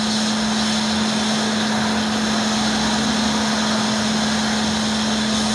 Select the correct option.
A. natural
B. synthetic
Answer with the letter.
A